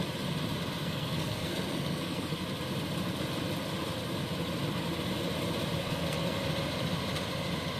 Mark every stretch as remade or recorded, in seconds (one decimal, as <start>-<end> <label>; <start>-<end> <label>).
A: 0.0-0.8 recorded; 0.8-2.4 remade; 2.4-5.8 recorded; 5.8-6.4 remade; 6.4-7.8 recorded